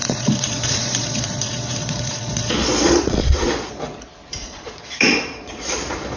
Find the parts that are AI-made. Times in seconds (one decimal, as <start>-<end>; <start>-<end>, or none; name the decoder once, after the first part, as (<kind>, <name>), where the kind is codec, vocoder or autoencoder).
0.0-3.7 (vocoder, Vocos); 4.4-6.2

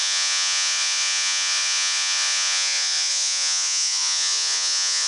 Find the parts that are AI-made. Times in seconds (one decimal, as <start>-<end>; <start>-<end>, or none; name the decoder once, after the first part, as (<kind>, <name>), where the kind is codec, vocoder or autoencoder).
0.0-5.1 (vocoder, Vocos)

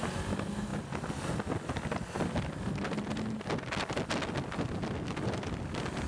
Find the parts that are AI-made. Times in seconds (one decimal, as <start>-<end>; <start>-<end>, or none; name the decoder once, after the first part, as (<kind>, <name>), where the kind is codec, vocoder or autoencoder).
none

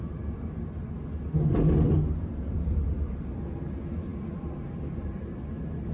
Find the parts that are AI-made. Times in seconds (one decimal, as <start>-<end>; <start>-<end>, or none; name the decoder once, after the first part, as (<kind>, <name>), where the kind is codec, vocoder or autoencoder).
none

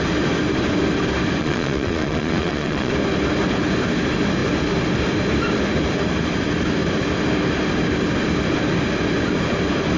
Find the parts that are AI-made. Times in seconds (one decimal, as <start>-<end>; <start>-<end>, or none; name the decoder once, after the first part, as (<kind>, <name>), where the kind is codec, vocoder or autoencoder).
1.4-2.9 (vocoder, Vocos)

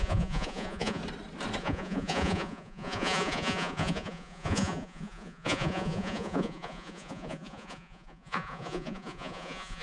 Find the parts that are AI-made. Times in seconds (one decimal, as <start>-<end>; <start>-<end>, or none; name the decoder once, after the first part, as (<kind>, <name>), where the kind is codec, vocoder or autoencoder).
0.0-1.0 (vocoder, Vocos); 1.6-9.8

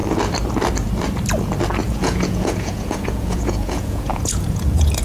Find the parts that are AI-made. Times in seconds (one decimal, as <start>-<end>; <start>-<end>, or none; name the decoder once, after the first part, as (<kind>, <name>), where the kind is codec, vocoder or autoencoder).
1.8-5.0 (vocoder, Vocos)